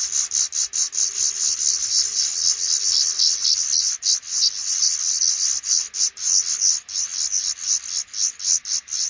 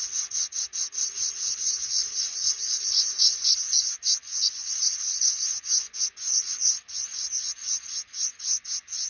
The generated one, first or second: second